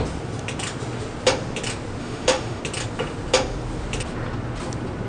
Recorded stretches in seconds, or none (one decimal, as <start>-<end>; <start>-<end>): 0.0-2.0; 2.6-5.1